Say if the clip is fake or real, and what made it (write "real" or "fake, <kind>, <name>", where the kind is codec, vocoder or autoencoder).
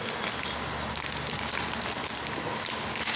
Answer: real